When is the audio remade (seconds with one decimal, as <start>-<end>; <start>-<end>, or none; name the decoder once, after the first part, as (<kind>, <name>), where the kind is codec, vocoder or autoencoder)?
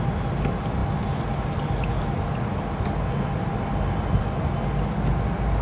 none